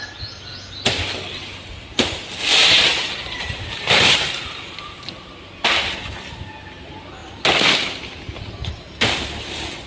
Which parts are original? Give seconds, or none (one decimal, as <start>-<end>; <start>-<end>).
0.0-2.5; 5.0-9.9